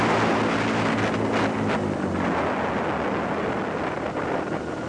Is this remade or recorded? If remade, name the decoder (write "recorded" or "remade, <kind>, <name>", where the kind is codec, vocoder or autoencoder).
recorded